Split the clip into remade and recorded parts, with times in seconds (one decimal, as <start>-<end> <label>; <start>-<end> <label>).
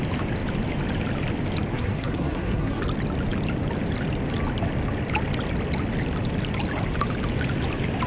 0.0-1.7 recorded; 1.7-2.8 remade; 2.8-8.1 recorded